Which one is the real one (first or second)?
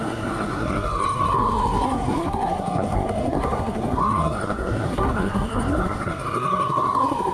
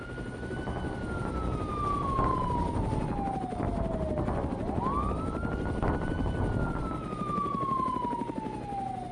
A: second